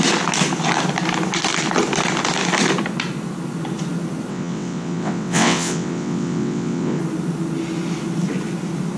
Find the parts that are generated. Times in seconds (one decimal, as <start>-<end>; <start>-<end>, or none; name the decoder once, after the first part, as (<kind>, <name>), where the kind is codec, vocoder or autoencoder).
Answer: 4.3-7.0 (vocoder, WaveNeXt)